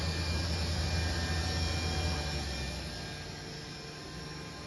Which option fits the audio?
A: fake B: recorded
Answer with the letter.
B